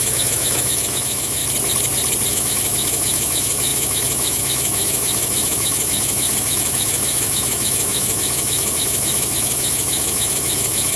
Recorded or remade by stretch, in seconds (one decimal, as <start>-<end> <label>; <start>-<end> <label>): 0.0-1.4 remade; 1.4-2.3 recorded; 2.3-11.0 remade